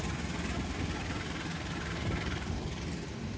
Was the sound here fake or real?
real